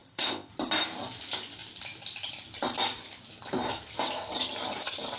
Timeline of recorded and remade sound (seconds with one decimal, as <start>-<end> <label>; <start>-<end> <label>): 0.0-0.5 remade; 0.5-5.2 recorded